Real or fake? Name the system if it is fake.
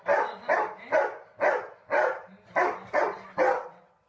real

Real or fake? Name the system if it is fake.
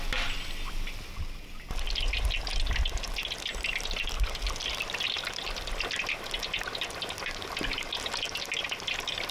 real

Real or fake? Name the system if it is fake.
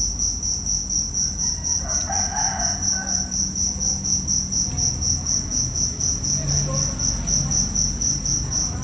real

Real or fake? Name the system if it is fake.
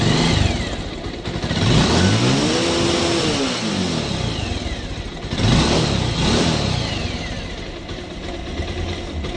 real